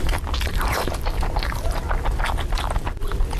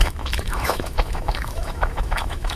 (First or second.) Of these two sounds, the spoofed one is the second